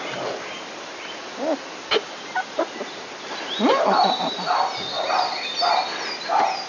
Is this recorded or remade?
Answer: recorded